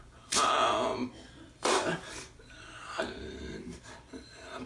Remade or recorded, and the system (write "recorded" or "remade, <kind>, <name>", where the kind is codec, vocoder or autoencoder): remade, vocoder, BigVGAN v2